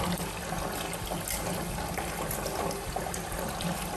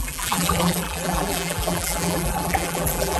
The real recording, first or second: first